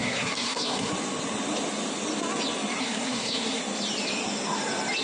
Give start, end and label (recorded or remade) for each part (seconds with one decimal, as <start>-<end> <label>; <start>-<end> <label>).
0.0-0.9 remade; 0.9-2.8 recorded; 2.8-3.6 remade; 3.6-5.0 recorded

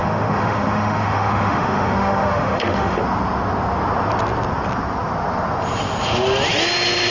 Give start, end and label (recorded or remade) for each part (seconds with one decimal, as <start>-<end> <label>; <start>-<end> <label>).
0.0-3.0 remade; 3.0-7.1 recorded

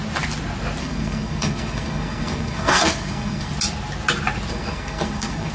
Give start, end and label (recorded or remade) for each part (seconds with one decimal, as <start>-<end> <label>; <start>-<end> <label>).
0.0-0.8 recorded; 0.8-3.5 remade; 3.5-4.5 recorded; 4.5-5.5 remade

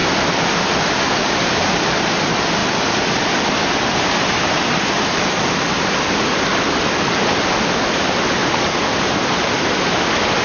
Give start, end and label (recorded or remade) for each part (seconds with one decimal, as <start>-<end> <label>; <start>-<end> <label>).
0.0-8.4 remade; 8.4-8.9 recorded; 8.9-10.4 remade